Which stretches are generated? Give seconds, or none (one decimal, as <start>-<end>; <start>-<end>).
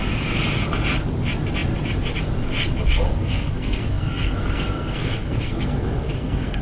3.1-6.6